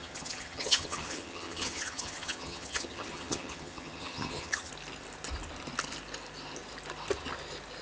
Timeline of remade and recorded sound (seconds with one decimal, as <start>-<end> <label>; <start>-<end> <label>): 0.0-4.7 remade; 4.7-7.8 recorded